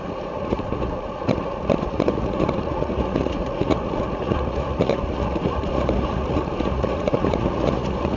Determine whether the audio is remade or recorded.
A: remade